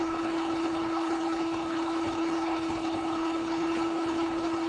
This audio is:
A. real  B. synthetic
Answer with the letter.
B